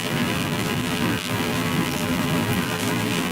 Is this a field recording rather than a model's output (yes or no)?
no